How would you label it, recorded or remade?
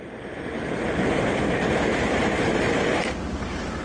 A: remade